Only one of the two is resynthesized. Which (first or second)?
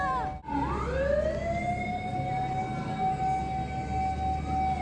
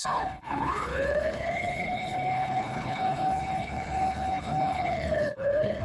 second